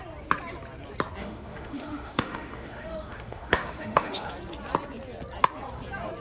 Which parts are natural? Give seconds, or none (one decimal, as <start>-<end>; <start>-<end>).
0.0-1.2; 4.3-6.2